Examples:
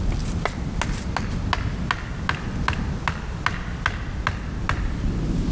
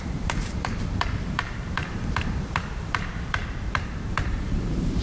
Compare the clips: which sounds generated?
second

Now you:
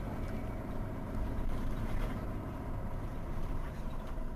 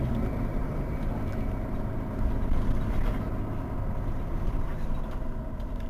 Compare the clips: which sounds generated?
first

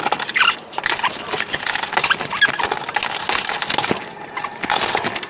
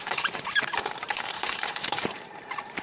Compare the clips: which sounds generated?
second